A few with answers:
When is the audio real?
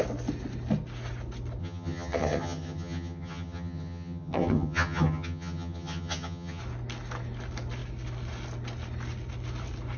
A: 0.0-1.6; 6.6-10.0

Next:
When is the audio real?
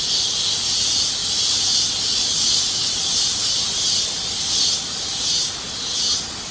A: 0.0-6.5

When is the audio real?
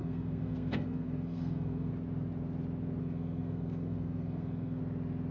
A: 1.9-3.0; 4.8-5.3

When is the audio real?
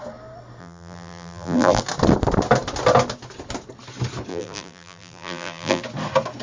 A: 0.0-0.6; 1.8-4.3; 5.8-6.4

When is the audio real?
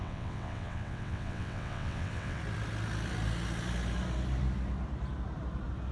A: 2.4-5.9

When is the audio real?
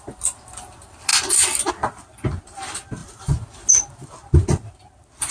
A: 0.0-5.3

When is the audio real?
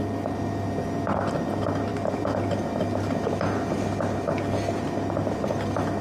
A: 0.0-6.0